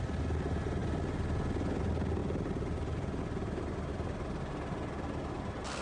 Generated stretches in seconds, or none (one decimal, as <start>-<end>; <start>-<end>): none